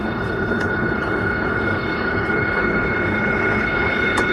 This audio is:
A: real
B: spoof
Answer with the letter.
B